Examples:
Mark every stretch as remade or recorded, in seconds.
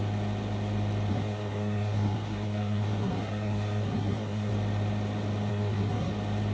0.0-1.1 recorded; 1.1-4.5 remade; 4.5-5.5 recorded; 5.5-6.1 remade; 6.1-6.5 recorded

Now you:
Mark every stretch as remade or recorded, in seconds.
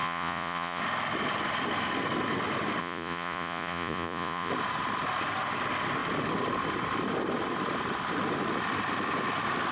0.0-0.8 remade; 0.8-2.8 recorded; 2.8-4.5 remade; 4.5-9.7 recorded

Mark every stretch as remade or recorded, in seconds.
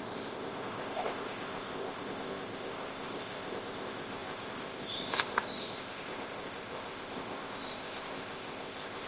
0.0-9.1 remade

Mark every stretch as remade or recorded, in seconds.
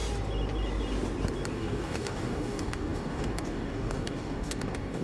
0.0-1.5 recorded; 1.5-5.0 remade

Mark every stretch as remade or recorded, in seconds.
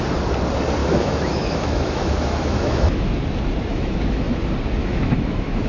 0.0-0.8 recorded; 0.8-3.1 remade; 3.1-3.7 recorded; 3.7-4.3 remade; 4.3-4.8 recorded; 4.8-5.7 remade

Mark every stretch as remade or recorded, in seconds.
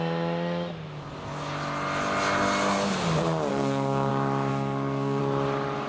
0.0-3.5 recorded; 3.5-4.1 remade; 4.1-4.5 recorded; 4.5-5.2 remade; 5.2-5.9 recorded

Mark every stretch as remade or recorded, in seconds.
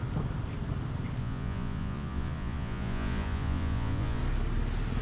0.0-1.2 recorded; 1.2-4.2 remade; 4.2-5.0 recorded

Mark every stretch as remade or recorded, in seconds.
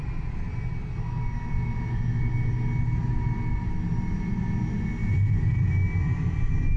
0.0-5.0 recorded; 5.0-5.7 remade; 5.7-6.8 recorded